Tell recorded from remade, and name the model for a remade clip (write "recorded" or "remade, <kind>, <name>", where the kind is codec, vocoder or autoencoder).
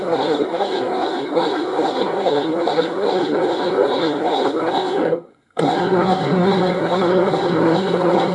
remade, codec, SNAC